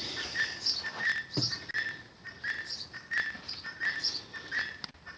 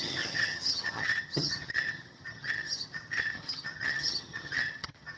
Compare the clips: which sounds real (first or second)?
first